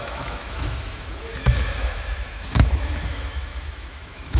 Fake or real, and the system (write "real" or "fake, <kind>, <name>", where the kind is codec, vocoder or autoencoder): fake, autoencoder, DAC-VAE